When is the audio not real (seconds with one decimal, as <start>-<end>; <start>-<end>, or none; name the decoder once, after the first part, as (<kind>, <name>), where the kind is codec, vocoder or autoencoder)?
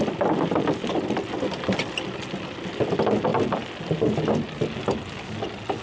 none